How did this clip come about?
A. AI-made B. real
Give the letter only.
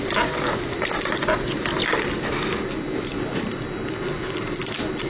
B